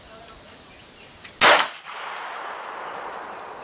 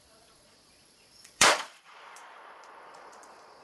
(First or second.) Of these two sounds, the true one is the first